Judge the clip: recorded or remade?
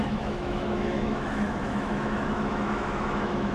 remade